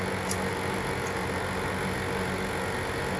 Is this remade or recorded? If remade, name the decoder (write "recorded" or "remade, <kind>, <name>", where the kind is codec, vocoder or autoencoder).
recorded